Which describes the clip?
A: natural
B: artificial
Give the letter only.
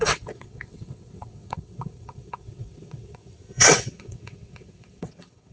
B